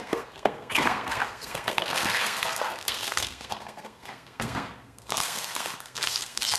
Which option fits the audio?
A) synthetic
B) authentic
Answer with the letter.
A